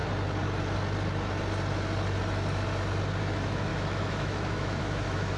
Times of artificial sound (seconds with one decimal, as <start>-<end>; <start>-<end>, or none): 3.2-5.4